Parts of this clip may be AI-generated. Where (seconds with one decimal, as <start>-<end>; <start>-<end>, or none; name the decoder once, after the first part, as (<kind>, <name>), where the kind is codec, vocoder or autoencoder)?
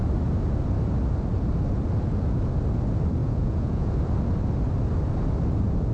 3.2-3.9 (vocoder, Vocos)